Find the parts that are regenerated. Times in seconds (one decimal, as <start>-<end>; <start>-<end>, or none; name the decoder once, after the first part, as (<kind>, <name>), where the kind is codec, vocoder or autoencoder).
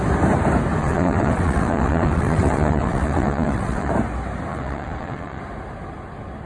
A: 0.8-3.9 (vocoder, WaveNeXt); 4.5-5.4